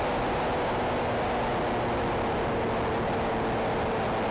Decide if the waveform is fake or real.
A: real